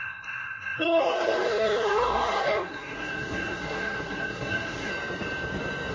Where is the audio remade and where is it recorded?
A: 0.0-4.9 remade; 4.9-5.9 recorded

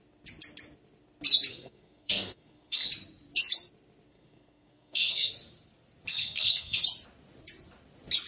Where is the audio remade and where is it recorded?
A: 0.0-1.5 recorded; 1.5-2.9 remade; 2.9-4.1 recorded; 4.1-5.3 remade; 5.3-6.1 recorded; 6.1-6.8 remade; 6.8-8.3 recorded

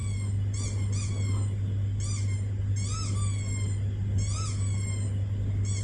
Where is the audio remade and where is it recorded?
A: 0.0-5.8 recorded

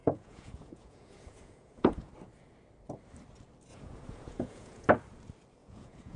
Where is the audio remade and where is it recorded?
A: 0.0-2.1 remade; 2.1-3.7 recorded; 3.7-4.9 remade; 4.9-5.6 recorded; 5.6-6.2 remade

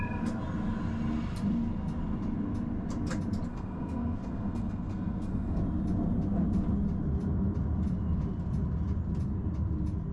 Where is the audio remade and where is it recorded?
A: 0.0-3.5 recorded; 3.5-5.6 remade; 5.6-10.1 recorded

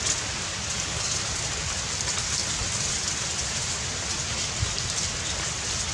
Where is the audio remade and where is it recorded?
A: 0.0-0.5 recorded; 0.5-1.2 remade; 1.2-5.9 recorded